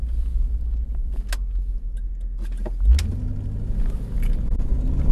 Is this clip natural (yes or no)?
yes